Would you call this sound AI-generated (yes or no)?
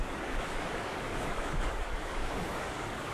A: yes